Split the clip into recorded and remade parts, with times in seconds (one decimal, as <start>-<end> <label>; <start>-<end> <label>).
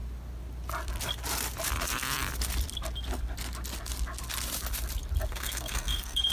0.0-5.3 recorded; 5.3-6.3 remade